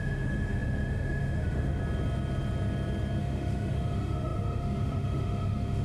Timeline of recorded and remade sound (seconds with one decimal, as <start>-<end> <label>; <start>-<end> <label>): 0.0-1.8 remade; 1.8-3.2 recorded; 3.2-5.8 remade